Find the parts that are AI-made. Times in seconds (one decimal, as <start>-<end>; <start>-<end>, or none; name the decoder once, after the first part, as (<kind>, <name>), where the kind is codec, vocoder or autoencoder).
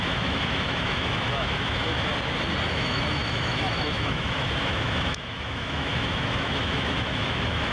0.0-2.1 (autoencoder, DAC-VAE); 2.7-7.7